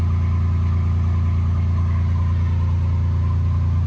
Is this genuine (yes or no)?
yes